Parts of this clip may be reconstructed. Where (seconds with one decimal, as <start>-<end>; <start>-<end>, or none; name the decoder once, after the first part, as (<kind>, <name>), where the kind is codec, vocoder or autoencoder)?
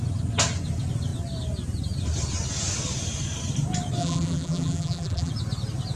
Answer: 4.0-5.3 (vocoder, BigVGAN v2)